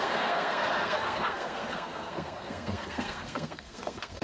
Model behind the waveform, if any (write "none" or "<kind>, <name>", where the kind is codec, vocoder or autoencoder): codec, SNAC